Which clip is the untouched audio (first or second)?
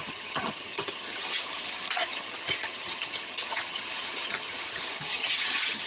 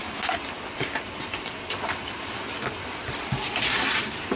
second